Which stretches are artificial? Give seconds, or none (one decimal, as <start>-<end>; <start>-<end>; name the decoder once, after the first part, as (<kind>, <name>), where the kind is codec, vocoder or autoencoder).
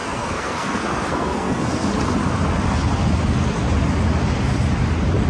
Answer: 0.0-1.9 (codec, SNAC)